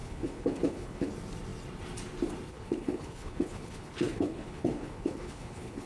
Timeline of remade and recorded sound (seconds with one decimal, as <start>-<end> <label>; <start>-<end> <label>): 0.0-1.1 remade; 1.1-2.5 recorded; 2.5-5.9 remade